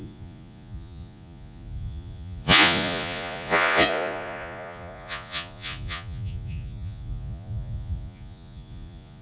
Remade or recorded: remade